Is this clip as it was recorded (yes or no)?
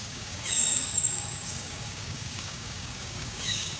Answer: no